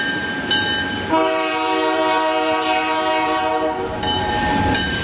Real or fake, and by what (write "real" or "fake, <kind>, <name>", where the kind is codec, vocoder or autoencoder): fake, vocoder, BigVGAN v2